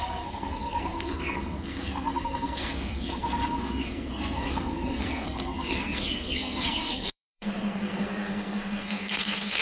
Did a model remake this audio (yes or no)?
yes